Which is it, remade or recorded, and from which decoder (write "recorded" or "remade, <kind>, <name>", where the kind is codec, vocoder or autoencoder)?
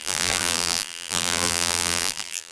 remade, vocoder, BigVGAN v2